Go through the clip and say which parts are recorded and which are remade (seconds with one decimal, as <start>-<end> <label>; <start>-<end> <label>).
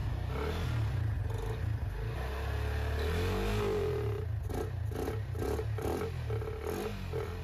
0.0-7.4 recorded